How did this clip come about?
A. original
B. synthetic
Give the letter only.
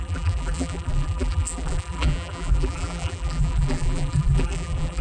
B